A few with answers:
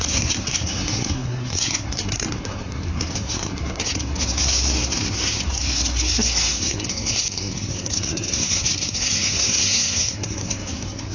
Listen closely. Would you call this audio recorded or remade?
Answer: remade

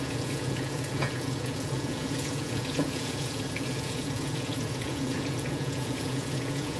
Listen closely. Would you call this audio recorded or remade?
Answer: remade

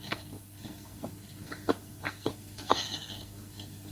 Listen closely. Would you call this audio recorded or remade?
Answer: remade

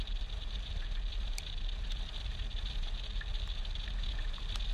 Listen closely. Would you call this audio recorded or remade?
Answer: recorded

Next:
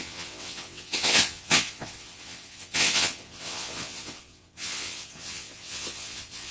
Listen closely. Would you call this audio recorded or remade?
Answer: remade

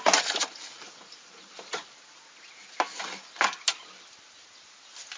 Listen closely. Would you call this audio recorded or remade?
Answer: recorded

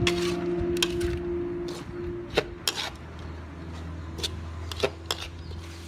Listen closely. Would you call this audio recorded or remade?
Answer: recorded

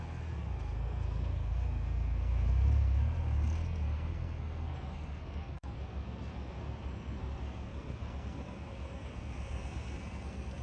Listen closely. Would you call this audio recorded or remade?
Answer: remade